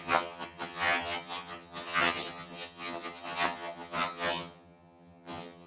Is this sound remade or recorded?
remade